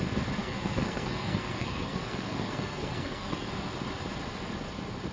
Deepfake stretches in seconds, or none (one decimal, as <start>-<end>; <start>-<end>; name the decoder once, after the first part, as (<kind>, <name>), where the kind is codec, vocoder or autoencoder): 0.4-3.5 (codec, SNAC)